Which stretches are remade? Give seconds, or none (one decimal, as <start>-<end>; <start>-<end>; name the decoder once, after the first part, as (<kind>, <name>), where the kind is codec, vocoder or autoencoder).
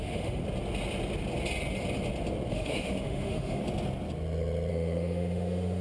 0.0-0.4 (autoencoder, DAC-VAE); 2.5-3.6; 4.7-5.8